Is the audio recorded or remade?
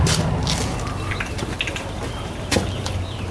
recorded